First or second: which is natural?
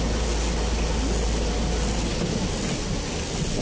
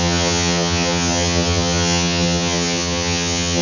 first